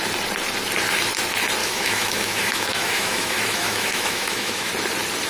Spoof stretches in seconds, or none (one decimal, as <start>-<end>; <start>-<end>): 1.6-4.7